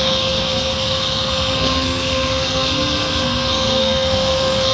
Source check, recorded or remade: remade